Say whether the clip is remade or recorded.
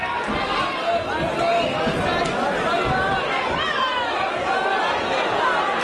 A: recorded